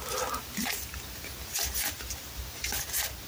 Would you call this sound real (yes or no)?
yes